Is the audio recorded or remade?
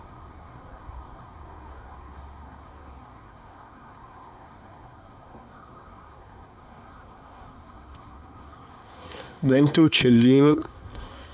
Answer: remade